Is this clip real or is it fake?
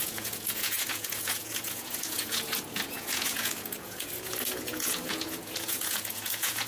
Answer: fake